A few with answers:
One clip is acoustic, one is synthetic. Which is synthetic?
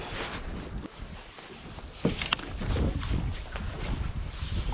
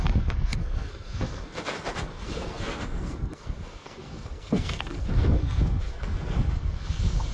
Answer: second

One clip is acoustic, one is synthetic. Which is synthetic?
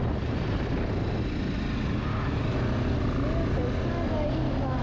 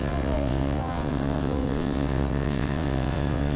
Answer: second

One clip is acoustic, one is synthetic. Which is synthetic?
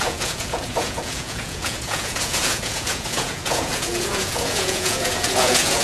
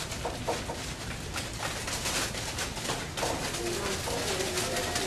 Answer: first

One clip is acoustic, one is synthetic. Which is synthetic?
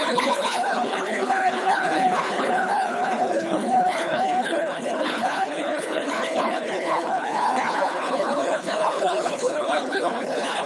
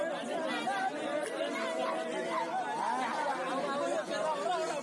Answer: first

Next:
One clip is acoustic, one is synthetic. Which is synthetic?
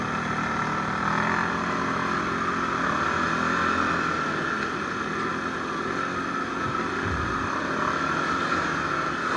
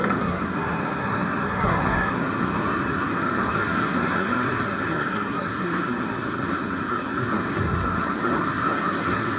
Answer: second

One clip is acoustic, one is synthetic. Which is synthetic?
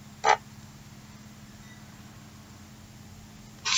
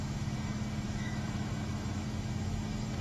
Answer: second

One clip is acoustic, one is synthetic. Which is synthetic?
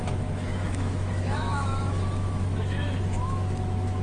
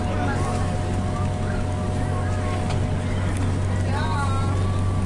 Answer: first